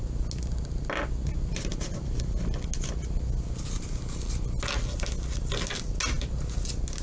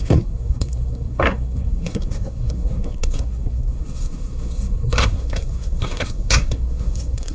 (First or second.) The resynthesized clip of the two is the second